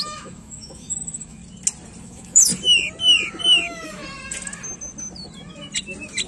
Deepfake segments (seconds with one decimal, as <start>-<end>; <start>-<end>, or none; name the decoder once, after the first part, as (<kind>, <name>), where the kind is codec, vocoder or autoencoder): 0.0-1.4 (autoencoder, DAC-VAE); 2.0-2.5; 3.4-4.0